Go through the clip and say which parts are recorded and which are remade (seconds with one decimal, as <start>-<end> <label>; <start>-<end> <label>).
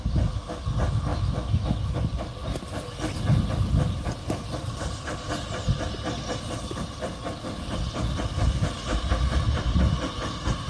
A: 0.0-1.1 recorded; 1.1-2.0 remade; 2.0-10.7 recorded